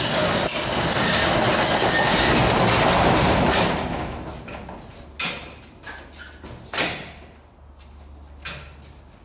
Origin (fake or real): real